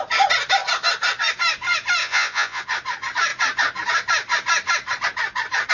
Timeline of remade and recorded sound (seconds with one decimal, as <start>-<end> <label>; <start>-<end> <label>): 0.0-2.0 recorded; 2.0-2.6 remade; 2.6-5.7 recorded